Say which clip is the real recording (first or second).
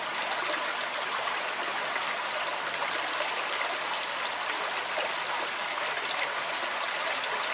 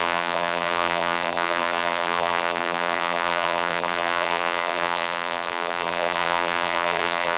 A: first